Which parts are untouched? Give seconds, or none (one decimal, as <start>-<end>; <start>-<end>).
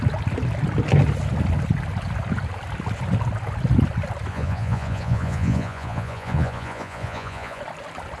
0.0-4.3; 7.6-8.2